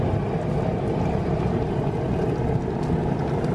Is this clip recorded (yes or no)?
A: yes